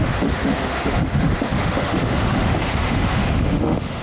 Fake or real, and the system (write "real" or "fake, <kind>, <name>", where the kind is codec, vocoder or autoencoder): fake, autoencoder, DAC-VAE